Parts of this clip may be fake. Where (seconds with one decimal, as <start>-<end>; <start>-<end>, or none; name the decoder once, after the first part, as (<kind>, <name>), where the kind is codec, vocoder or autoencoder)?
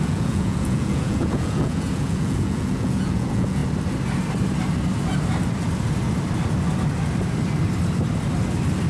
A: 0.0-3.6 (vocoder, Vocos)